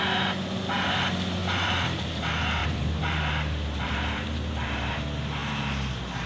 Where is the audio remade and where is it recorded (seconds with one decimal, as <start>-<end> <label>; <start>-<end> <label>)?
0.0-1.4 recorded; 1.4-2.2 remade; 2.2-2.6 recorded; 2.6-5.0 remade; 5.0-6.3 recorded